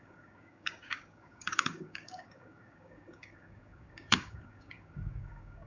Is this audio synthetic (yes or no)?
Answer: yes